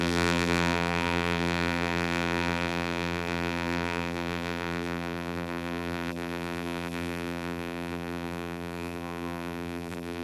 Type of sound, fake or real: fake